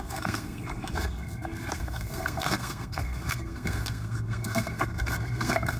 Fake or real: fake